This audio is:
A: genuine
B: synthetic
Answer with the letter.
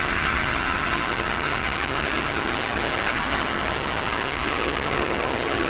B